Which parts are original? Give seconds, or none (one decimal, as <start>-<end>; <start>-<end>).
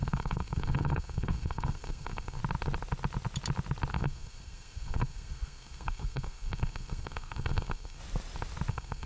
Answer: 2.4-3.9; 8.0-8.7